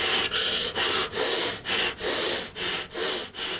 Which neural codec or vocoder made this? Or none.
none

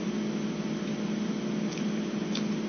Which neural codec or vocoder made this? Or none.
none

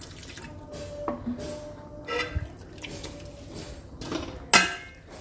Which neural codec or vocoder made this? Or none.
none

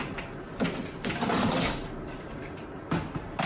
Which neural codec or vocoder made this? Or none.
none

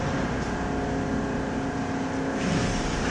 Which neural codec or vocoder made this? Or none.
none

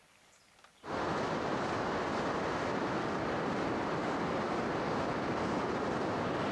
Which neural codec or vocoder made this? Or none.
none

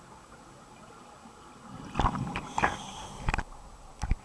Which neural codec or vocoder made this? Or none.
none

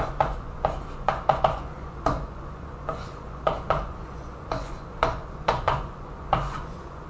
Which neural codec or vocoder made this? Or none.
vocoder, Vocos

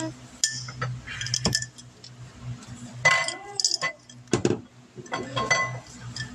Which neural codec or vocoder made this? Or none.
none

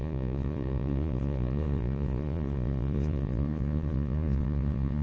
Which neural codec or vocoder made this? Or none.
vocoder, Vocos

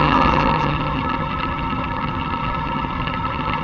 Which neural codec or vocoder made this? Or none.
vocoder, HiFi-GAN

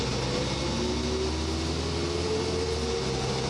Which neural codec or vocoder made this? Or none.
none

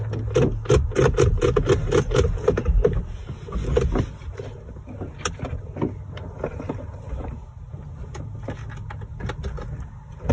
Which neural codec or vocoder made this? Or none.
none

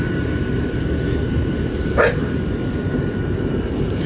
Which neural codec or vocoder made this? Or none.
vocoder, BigVGAN v2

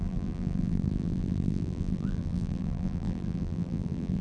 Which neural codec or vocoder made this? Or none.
vocoder, BigVGAN v2